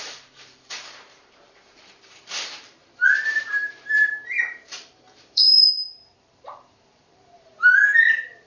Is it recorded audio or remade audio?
remade